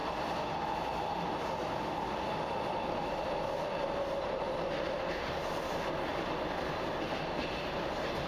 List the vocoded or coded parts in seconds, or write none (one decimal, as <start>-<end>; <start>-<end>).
2.7-4.3; 6.1-6.7